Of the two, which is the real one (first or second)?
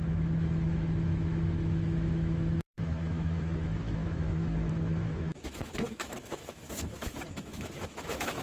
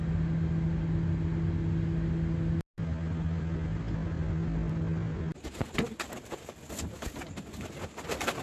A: second